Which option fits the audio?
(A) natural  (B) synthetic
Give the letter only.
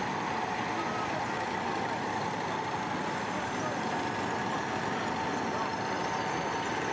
A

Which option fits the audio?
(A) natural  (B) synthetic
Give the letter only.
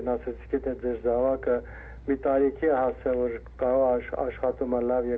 A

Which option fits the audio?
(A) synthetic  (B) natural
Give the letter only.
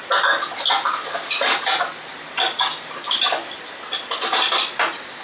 B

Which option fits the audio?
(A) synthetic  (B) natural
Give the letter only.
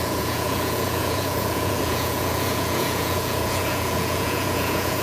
A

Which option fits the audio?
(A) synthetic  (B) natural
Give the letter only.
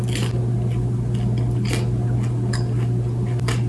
B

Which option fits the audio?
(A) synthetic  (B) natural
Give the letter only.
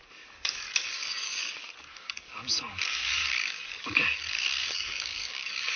A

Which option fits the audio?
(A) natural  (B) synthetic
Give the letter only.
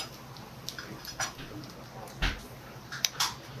A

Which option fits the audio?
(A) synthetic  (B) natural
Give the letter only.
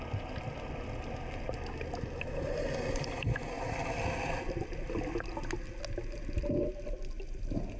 B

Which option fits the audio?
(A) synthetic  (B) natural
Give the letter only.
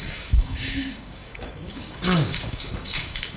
A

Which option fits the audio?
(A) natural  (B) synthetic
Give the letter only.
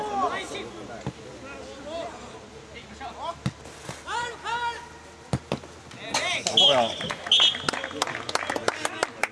A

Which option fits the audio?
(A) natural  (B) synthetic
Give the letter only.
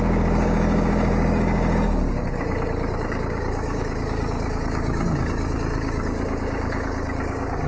B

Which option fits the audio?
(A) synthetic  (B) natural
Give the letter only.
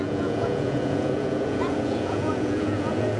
A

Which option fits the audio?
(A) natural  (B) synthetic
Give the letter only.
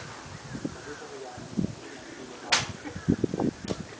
A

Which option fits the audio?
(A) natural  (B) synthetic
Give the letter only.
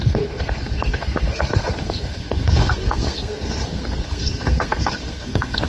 B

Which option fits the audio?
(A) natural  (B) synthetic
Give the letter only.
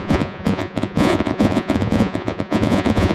B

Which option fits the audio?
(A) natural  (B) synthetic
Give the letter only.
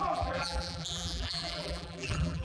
B